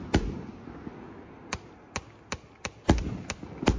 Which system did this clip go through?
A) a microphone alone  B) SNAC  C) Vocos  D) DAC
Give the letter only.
A